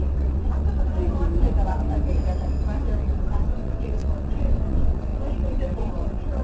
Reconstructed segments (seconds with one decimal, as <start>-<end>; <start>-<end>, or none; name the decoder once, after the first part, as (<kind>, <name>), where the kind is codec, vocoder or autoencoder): 0.0-0.9 (vocoder, WaveNeXt); 3.0-6.4